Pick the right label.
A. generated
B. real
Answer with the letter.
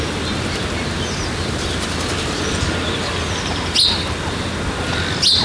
B